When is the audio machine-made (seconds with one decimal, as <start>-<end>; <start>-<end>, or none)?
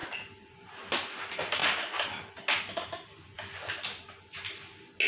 none